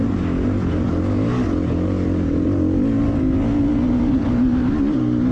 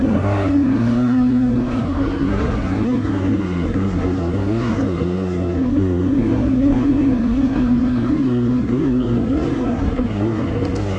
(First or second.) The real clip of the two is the first